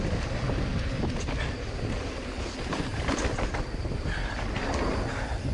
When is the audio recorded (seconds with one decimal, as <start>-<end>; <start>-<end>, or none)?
0.0-5.5